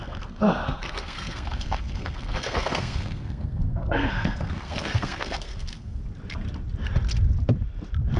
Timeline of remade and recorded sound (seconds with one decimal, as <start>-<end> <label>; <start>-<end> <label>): 0.0-6.0 remade; 6.0-8.2 recorded